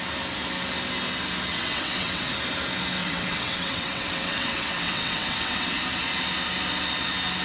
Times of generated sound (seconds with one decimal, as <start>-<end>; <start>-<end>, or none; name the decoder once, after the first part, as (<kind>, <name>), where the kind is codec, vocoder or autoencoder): 1.5-2.3 (vocoder, WaveNeXt); 3.0-5.8